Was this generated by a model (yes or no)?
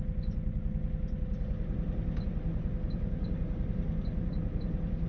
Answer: no